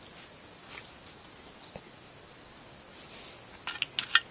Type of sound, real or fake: real